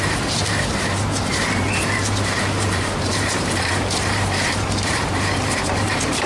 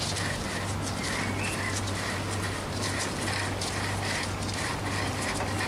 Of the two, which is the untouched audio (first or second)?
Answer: second